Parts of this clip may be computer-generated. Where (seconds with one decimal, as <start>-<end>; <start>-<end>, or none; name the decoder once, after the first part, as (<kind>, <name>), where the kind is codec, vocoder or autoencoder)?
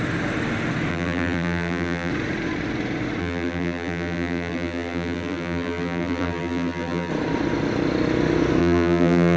0.9-2.1 (vocoder, BigVGAN v2); 3.2-7.1; 8.6-9.4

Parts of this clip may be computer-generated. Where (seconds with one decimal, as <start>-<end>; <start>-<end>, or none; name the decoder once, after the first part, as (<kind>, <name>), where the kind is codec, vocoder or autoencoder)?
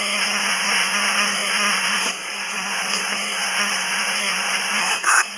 0.0-5.4 (codec, SNAC)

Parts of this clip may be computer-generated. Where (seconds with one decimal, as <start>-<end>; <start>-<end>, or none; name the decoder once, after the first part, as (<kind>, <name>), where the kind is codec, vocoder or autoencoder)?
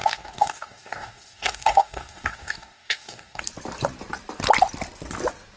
0.0-3.4 (codec, DAC)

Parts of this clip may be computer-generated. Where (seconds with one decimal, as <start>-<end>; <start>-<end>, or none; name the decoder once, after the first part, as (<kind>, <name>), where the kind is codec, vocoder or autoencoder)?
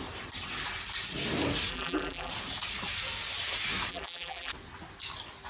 1.7-2.3 (vocoder, BigVGAN v2); 3.9-4.5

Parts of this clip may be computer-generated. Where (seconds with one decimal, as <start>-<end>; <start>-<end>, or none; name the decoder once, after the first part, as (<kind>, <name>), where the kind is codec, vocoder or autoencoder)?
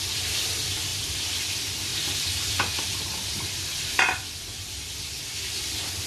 0.0-2.9 (vocoder, BigVGAN v2); 3.7-6.1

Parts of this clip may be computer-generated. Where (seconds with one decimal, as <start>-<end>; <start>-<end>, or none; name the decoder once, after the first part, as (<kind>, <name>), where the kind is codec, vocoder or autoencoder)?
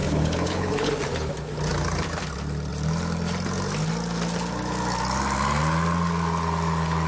0.0-0.9 (codec, HILCodec)